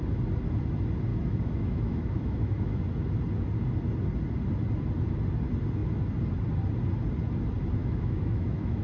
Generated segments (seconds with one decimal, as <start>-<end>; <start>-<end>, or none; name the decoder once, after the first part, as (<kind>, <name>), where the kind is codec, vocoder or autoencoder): 1.1-2.8 (autoencoder, DAC-VAE); 7.8-8.8